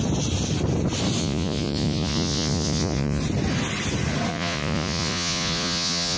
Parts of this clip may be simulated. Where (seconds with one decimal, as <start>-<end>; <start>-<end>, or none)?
1.2-3.2; 4.3-6.2